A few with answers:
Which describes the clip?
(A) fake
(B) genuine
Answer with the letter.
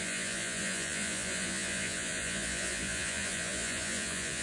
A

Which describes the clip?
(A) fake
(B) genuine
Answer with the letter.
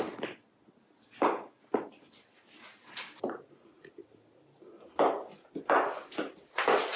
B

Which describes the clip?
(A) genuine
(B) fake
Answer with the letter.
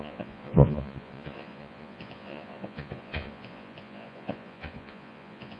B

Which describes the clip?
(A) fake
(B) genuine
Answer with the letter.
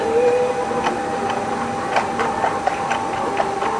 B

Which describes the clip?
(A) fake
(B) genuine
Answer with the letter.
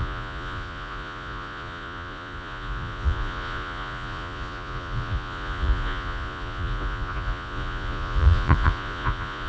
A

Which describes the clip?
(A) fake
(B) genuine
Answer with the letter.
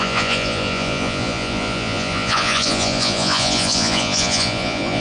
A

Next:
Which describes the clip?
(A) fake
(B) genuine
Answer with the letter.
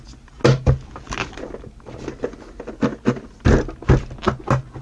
B